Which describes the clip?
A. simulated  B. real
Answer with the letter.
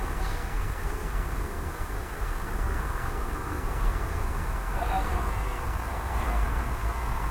A